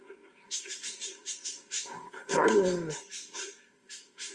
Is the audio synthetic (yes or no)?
yes